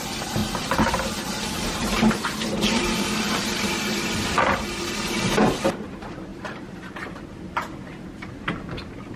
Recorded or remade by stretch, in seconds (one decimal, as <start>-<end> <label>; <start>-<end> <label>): 0.0-0.4 recorded; 0.4-5.3 remade; 5.3-6.3 recorded; 6.3-7.2 remade; 7.2-9.2 recorded